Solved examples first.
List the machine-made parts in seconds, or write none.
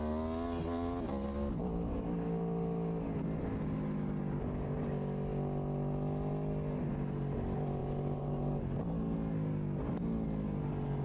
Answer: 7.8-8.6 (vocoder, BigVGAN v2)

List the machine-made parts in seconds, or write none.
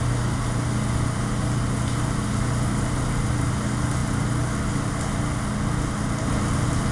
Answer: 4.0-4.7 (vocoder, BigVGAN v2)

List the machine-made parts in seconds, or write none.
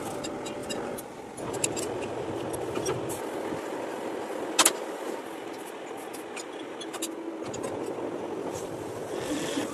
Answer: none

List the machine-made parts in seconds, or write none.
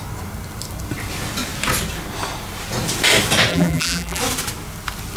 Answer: 3.5-4.2 (vocoder, BigVGAN v2)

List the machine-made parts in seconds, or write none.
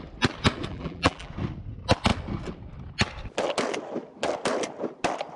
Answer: 0.7-1.3 (vocoder, BigVGAN v2)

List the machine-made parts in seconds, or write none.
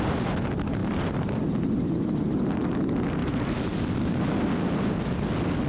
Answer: 0.8-1.4 (vocoder, BigVGAN v2)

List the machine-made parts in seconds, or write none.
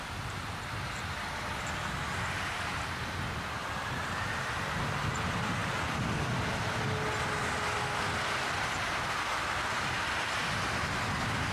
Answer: 5.6-6.6 (vocoder, BigVGAN v2)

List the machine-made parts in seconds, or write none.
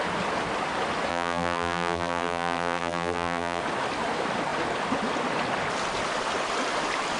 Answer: 1.1-3.6 (vocoder, BigVGAN v2)